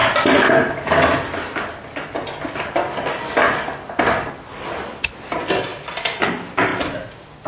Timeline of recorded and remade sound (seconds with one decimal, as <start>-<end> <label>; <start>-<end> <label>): 0.0-7.5 recorded